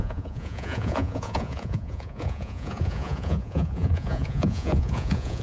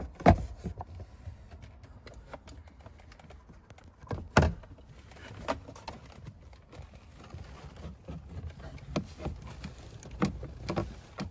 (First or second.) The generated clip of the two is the first